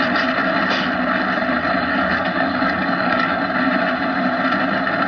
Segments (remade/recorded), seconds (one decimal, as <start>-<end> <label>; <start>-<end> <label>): 0.0-1.9 recorded; 1.9-3.4 remade; 3.4-5.1 recorded